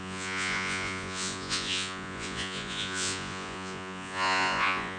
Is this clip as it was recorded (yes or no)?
no